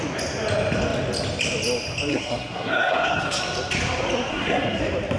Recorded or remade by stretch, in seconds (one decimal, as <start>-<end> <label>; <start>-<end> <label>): 0.0-2.1 recorded; 2.1-3.4 remade; 3.4-4.3 recorded; 4.3-4.8 remade; 4.8-5.2 recorded